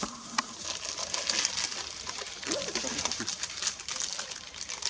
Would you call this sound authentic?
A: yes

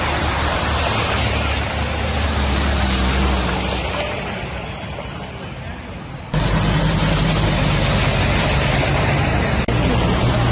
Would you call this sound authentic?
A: yes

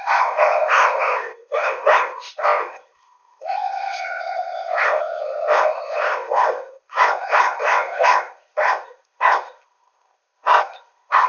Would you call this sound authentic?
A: no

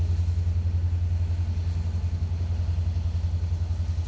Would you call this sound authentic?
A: yes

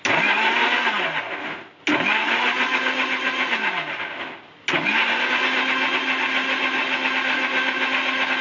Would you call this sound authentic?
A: yes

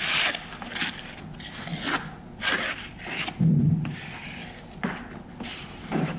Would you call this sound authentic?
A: yes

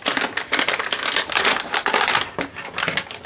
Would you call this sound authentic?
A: yes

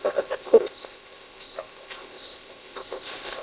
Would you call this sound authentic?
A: no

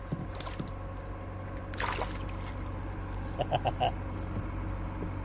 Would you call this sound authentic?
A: yes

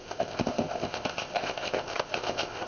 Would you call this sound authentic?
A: no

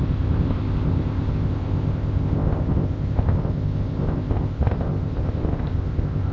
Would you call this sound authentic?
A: no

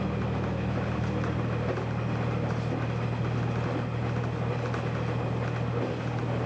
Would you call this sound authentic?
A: yes